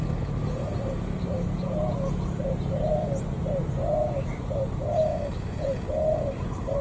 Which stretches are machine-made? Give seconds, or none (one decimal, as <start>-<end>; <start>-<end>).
0.0-6.8